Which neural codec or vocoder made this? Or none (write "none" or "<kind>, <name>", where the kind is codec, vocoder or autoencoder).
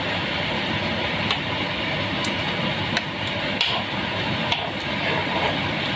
none